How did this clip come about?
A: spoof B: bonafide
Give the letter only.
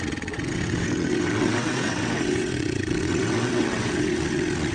A